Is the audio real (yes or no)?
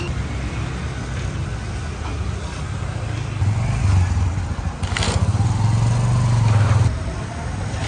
yes